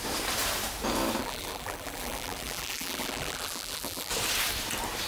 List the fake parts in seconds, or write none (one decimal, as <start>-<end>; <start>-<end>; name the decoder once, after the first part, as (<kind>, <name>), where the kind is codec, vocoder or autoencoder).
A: 1.2-4.1 (vocoder, BigVGAN v2)